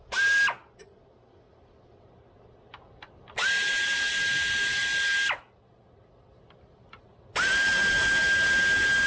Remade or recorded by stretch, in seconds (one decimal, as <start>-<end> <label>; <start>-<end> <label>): 0.0-9.1 recorded